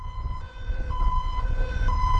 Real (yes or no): no